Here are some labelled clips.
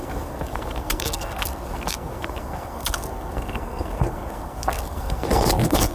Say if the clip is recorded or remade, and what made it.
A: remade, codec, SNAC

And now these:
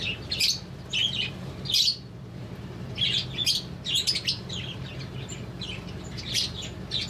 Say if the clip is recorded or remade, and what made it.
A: recorded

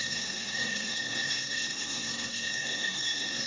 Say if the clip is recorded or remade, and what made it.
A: remade, codec, SNAC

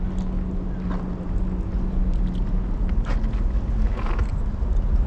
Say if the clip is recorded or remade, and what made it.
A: recorded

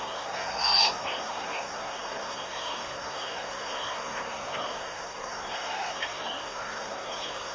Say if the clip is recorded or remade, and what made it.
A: remade, codec, SNAC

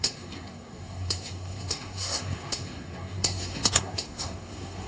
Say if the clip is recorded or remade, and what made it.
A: remade, codec, SNAC